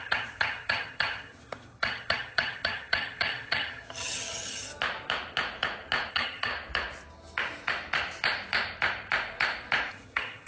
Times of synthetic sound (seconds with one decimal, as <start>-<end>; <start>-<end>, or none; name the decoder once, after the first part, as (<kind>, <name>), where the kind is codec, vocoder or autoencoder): 0.0-4.7 (vocoder, HiFi-GAN); 6.1-6.5; 9.9-10.5